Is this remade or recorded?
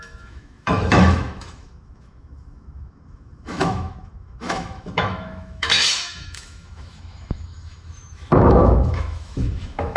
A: remade